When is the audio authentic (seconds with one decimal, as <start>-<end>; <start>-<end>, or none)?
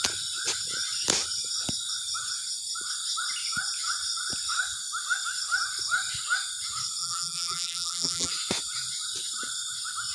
0.0-7.0; 8.3-10.1